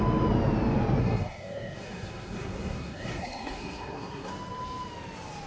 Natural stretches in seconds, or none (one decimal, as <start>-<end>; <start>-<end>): 0.0-1.0; 4.3-5.5